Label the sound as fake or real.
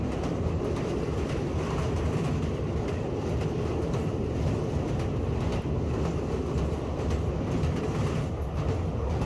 real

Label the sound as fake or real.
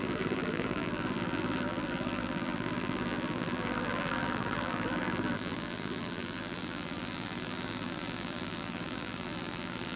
fake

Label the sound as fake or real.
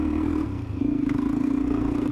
fake